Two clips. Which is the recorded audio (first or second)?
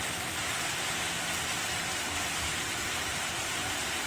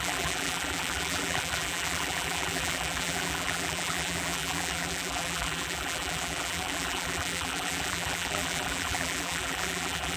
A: first